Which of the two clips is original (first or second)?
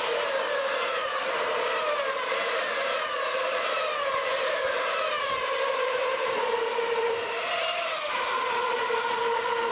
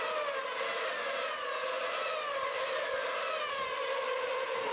second